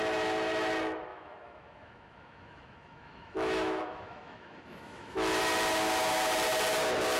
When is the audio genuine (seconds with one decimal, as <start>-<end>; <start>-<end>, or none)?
0.0-1.1; 5.4-7.2